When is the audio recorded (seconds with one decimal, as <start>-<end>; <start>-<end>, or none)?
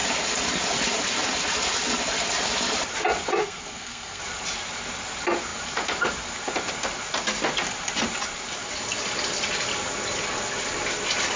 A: 0.0-3.4; 4.2-11.4